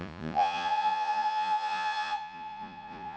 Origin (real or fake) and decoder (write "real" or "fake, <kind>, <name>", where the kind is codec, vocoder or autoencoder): fake, vocoder, Vocos